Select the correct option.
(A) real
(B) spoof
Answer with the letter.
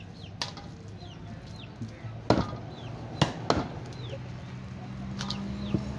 A